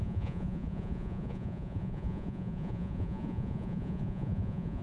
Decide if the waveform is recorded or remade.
remade